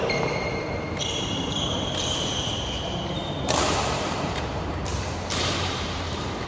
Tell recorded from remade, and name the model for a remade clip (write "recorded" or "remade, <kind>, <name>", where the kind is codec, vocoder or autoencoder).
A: remade, vocoder, BigVGAN v2